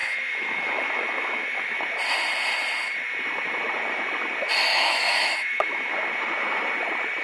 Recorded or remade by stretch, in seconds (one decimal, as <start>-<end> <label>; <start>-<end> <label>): 0.0-1.8 remade; 1.8-4.7 recorded; 4.7-5.9 remade; 5.9-7.2 recorded